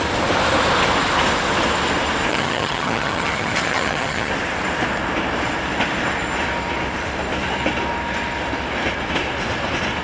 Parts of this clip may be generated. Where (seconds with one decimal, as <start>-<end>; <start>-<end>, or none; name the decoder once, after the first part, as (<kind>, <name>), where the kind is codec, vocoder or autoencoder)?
2.3-4.3 (vocoder, HiFi-GAN)

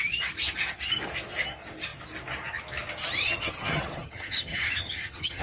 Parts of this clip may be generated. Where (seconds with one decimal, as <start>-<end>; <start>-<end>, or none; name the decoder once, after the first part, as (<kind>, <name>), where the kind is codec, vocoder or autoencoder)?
3.2-5.4 (vocoder, HiFi-GAN)